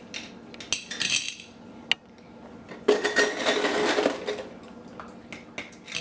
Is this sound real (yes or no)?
yes